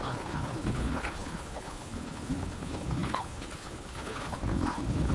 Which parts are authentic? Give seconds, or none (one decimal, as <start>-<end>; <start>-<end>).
none